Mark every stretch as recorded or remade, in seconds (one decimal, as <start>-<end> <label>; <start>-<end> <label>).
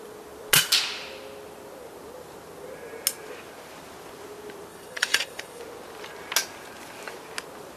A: 0.0-4.7 recorded; 4.7-5.6 remade; 5.6-7.8 recorded